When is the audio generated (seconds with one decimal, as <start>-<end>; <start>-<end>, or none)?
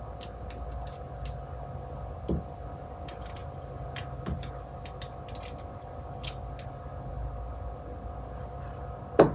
none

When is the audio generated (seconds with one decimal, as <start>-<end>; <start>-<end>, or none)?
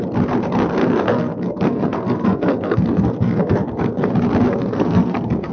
0.8-4.1; 4.5-5.5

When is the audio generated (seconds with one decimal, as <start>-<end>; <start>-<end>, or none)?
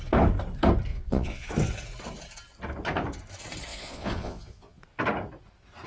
0.9-1.5; 3.7-4.8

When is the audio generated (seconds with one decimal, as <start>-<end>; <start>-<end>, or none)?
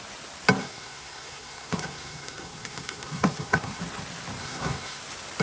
0.6-3.8; 4.4-5.0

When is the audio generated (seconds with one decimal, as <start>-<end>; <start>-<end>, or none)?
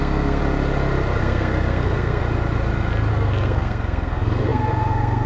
0.0-0.4; 1.2-2.2; 3.1-5.3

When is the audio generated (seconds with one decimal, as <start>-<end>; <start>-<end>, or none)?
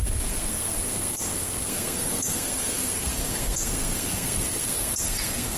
0.0-5.6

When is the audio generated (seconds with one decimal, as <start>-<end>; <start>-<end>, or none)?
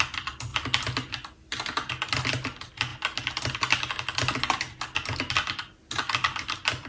none